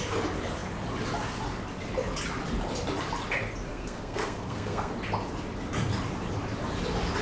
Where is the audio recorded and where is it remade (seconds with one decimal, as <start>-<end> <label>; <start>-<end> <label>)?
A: 0.0-3.7 recorded; 3.7-4.9 remade; 4.9-7.2 recorded